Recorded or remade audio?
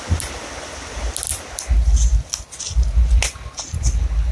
recorded